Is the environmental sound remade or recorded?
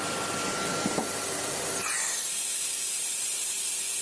recorded